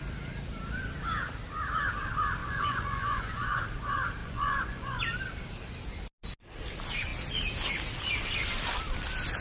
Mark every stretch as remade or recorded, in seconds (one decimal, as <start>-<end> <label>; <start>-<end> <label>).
0.0-2.4 recorded; 2.4-3.6 remade; 3.6-4.2 recorded; 4.2-5.0 remade; 5.0-9.4 recorded